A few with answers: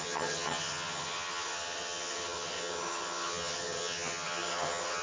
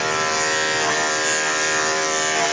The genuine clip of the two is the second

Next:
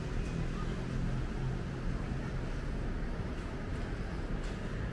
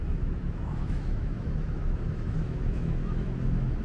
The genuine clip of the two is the first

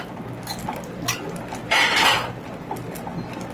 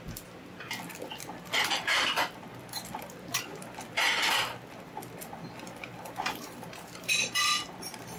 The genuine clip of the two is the first